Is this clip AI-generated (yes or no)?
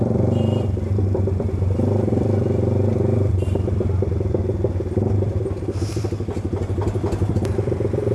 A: yes